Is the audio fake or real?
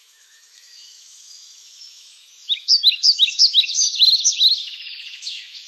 fake